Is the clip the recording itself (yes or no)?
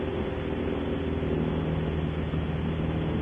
yes